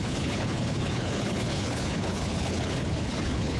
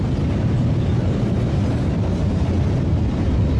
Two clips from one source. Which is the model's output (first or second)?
first